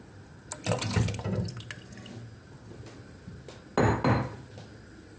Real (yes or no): yes